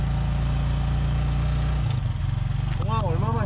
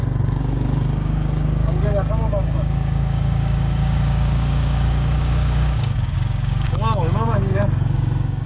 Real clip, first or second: first